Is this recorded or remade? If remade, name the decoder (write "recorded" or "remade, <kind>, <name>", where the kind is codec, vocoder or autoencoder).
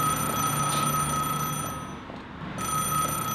recorded